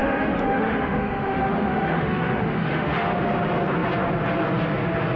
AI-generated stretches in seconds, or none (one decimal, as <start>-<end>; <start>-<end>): 0.0-3.1